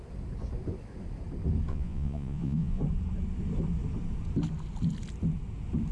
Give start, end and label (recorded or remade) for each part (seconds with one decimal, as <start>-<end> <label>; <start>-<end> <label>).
0.0-1.7 recorded; 1.7-2.8 remade; 2.8-5.9 recorded